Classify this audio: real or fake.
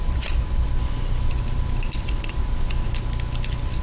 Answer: real